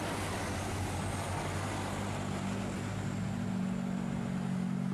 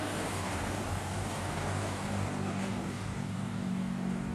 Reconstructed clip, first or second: second